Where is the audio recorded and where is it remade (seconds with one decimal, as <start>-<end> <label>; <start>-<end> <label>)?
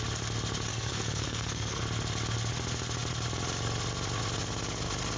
0.0-0.7 recorded; 0.7-1.8 remade; 1.8-5.2 recorded